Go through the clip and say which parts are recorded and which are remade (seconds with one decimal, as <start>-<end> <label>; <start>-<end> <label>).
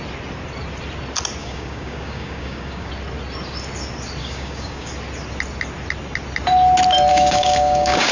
0.0-1.4 recorded; 1.4-2.9 remade; 2.9-4.2 recorded; 4.2-4.9 remade; 4.9-7.1 recorded; 7.1-8.1 remade